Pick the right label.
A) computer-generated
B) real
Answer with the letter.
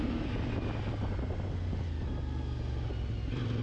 B